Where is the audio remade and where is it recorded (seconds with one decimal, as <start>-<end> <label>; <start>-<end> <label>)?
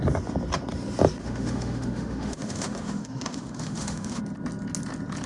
0.0-1.2 recorded; 1.2-4.2 remade; 4.2-5.3 recorded